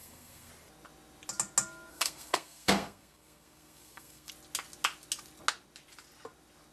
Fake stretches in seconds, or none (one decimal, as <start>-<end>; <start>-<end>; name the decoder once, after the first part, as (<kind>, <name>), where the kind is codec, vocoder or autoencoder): 0.0-0.5 (codec, SNAC); 1.9-4.3